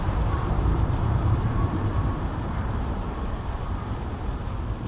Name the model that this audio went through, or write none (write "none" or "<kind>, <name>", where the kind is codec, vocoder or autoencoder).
vocoder, BigVGAN v2